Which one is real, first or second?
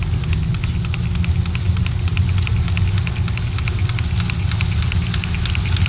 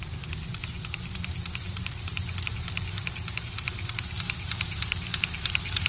first